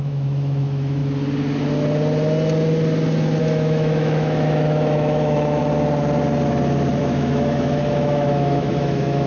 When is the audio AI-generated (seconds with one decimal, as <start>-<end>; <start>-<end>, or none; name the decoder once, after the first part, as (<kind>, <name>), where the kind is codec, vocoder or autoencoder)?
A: 0.0-1.0 (autoencoder, DAC-VAE); 3.4-5.6; 7.0-9.3